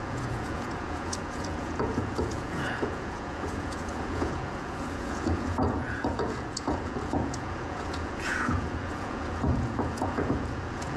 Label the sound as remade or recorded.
remade